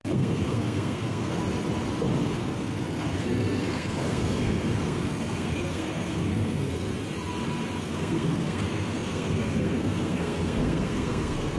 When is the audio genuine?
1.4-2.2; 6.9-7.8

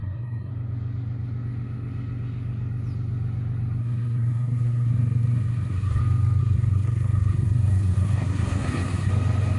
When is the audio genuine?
0.5-3.8; 6.0-6.4; 9.1-9.6

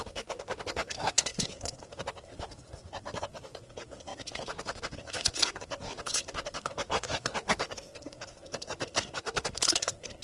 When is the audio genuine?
none